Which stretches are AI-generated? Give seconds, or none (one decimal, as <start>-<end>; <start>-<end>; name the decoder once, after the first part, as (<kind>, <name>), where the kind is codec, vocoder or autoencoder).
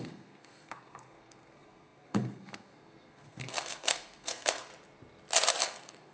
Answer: 0.0-4.7 (codec, SNAC); 5.6-6.1